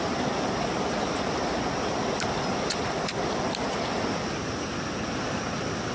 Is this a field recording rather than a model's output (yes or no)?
yes